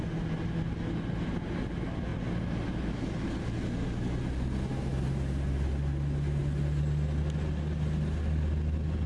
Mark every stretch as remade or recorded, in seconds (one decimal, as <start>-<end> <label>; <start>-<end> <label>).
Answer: 0.0-9.1 recorded